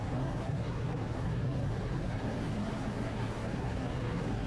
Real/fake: fake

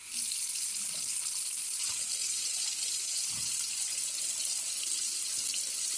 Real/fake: real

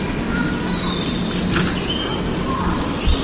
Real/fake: real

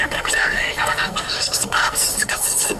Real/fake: fake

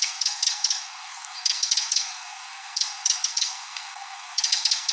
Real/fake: fake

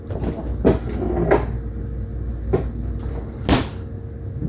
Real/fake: real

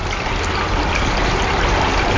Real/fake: real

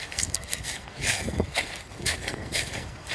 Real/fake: fake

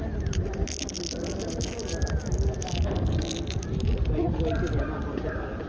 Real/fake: real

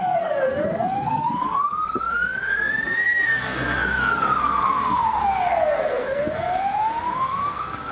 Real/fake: fake